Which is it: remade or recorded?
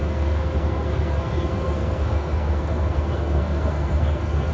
remade